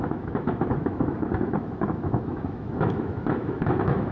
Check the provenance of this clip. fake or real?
fake